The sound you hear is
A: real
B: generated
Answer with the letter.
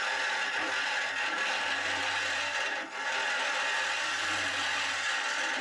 A